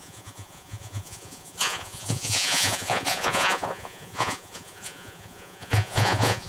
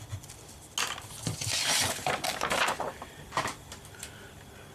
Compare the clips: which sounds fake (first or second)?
first